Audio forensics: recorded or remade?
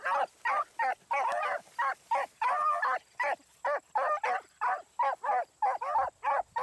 recorded